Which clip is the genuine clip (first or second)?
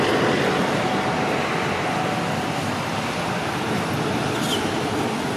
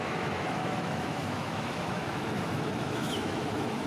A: first